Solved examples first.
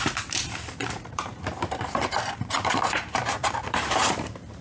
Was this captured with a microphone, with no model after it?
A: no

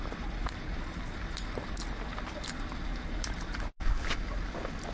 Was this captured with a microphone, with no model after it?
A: yes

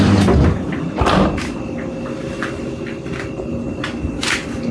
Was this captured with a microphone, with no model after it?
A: yes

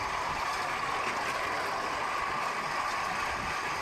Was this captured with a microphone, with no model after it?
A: yes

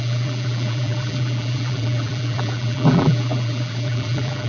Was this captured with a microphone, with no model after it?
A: no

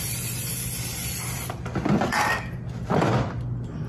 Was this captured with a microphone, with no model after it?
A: yes